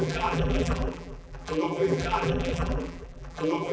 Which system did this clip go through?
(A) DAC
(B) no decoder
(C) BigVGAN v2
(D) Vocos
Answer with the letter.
C